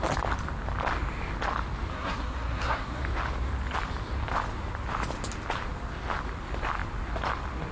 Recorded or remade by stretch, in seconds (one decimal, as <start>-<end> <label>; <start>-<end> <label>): 0.0-1.9 recorded; 1.9-3.0 remade; 3.0-7.7 recorded